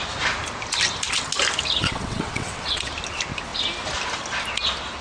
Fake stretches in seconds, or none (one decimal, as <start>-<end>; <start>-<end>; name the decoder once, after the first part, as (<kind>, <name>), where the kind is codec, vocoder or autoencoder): 1.8-2.9 (vocoder, WaveNeXt)